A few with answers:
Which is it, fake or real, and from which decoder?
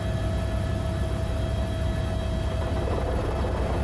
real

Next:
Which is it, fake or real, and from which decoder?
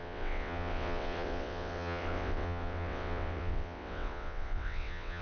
fake, vocoder, WaveNeXt